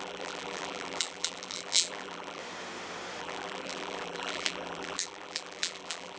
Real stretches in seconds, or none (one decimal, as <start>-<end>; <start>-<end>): 2.4-3.2